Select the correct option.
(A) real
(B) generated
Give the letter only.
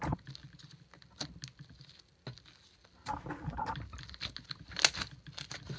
A